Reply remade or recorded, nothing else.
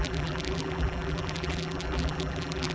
remade